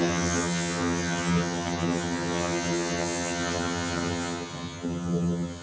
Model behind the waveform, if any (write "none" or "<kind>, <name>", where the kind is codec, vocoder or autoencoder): vocoder, HiFi-GAN